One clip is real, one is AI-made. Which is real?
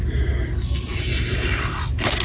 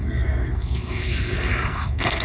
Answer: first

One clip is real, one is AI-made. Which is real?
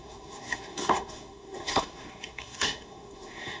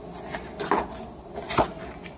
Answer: second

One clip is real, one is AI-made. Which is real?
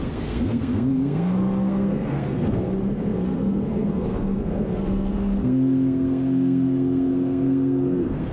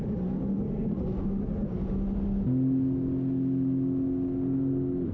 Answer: second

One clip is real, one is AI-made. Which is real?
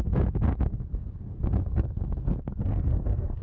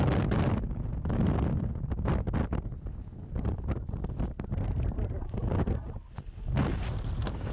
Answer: second